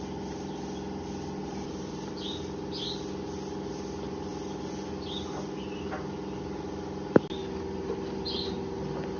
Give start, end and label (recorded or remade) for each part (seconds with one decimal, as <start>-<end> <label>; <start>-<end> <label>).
0.0-1.4 recorded; 1.4-2.1 remade; 2.1-9.2 recorded